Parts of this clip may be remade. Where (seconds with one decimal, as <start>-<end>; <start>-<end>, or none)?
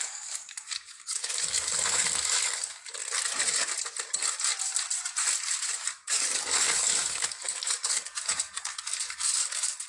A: 0.0-3.0; 5.7-9.9